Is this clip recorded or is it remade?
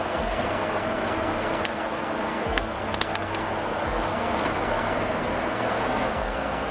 remade